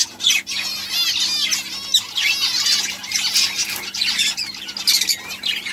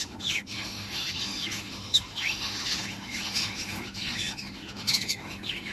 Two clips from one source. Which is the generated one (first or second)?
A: second